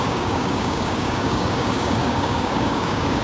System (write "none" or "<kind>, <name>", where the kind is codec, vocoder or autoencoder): codec, DAC